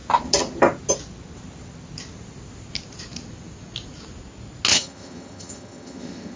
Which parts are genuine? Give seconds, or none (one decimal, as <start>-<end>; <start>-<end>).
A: 0.0-4.7